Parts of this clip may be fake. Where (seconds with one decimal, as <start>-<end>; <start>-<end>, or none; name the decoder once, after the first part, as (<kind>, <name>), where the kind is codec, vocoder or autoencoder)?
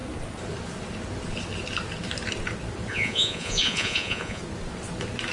2.9-4.4 (vocoder, Vocos)